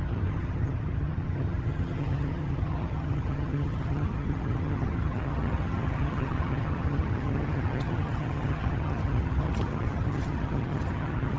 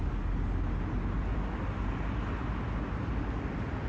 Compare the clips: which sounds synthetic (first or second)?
first